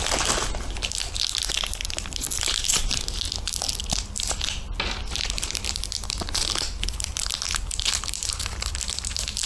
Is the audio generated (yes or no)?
no